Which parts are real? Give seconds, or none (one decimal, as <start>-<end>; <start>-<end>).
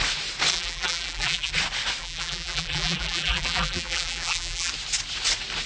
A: 0.0-0.5; 1.5-2.0; 4.7-5.7